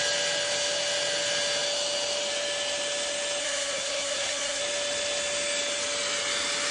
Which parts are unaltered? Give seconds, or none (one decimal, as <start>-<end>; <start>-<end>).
0.0-3.4; 4.6-6.7